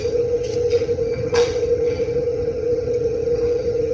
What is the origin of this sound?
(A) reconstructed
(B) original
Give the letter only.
A